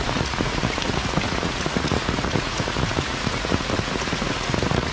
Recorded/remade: remade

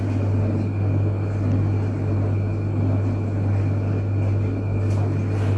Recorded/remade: recorded